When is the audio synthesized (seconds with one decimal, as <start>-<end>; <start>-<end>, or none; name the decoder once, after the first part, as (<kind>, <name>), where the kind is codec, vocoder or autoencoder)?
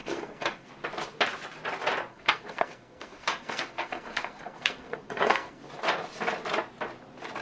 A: 0.0-0.7 (codec, SNAC); 2.1-5.6